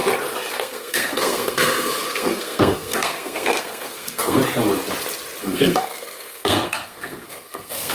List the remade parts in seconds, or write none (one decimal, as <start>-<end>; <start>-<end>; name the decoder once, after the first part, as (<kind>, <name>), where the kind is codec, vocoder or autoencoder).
0.5-4.4 (codec, SNAC); 5.4-7.9